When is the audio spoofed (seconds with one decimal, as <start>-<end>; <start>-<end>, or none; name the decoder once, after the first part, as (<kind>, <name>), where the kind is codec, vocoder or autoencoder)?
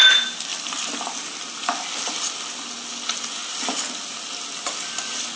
none